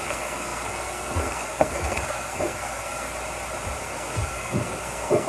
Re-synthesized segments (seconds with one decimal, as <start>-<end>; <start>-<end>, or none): 0.0-3.1; 3.8-5.3

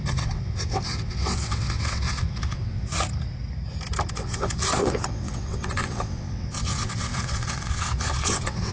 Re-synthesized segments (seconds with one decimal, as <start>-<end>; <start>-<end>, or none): 0.0-2.9; 4.1-8.7

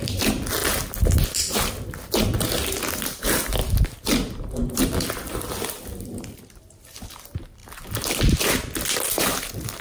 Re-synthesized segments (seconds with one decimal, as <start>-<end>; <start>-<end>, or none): 0.0-0.6; 2.9-3.6; 4.8-7.6; 9.1-9.8

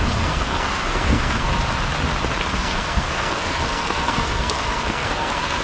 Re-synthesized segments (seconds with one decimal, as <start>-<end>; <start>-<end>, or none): 0.0-1.5; 2.5-5.6

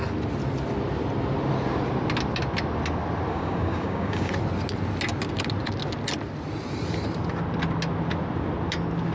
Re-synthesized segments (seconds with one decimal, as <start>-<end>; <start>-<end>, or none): 3.3-4.3